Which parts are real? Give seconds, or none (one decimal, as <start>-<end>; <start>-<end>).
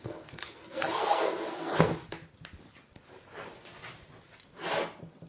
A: 1.9-5.3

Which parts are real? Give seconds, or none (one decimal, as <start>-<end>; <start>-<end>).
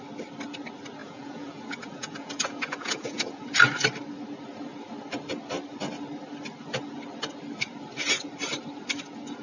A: 0.0-1.0; 3.4-9.4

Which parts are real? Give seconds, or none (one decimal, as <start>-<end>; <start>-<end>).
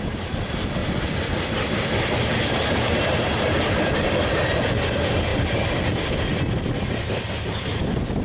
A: 0.0-8.2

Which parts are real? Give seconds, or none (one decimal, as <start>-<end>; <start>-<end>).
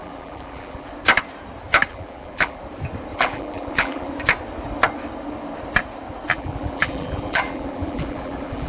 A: 0.9-1.9; 2.6-3.1; 4.1-6.3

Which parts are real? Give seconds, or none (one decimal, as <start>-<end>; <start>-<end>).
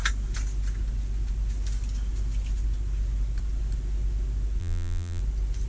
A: 0.0-4.6; 5.2-5.7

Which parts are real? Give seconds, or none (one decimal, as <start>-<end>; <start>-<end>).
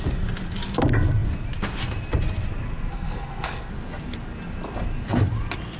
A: 0.0-2.9; 3.7-5.8